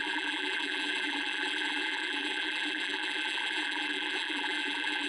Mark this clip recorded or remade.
remade